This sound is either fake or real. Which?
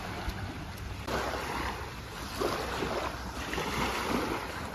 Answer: real